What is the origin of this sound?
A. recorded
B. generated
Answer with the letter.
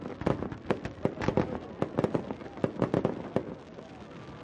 A